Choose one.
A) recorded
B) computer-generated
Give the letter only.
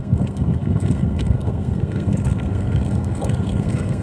B